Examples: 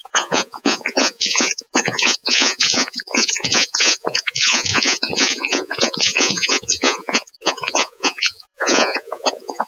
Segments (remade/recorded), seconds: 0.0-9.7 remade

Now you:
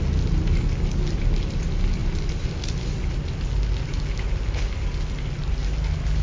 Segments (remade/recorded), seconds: 0.0-6.2 recorded

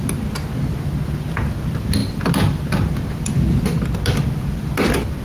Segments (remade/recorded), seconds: 0.0-5.2 recorded